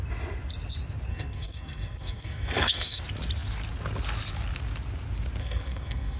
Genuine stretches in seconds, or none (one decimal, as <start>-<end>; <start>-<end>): 0.0-1.1; 3.0-5.4